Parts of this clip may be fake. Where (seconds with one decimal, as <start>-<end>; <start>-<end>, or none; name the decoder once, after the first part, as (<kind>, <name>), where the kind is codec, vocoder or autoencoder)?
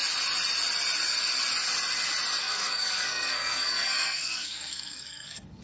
2.4-5.6 (codec, SNAC)